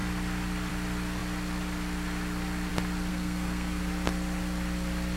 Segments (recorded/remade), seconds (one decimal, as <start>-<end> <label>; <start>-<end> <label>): 0.0-3.1 recorded; 3.1-3.8 remade; 3.8-5.2 recorded